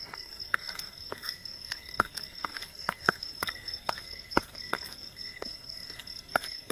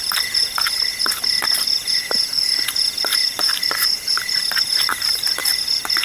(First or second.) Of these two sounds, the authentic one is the second